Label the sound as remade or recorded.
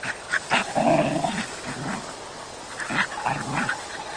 recorded